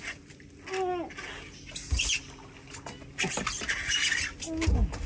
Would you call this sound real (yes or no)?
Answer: yes